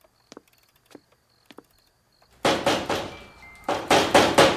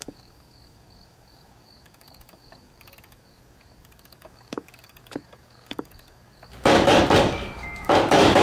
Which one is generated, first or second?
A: second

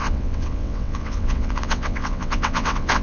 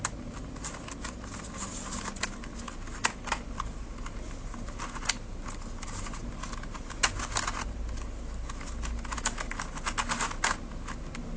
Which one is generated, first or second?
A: first